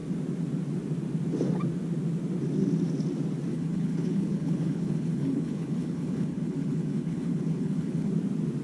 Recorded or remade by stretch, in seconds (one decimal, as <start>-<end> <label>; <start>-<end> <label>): 0.0-3.5 recorded; 3.5-8.1 remade; 8.1-8.6 recorded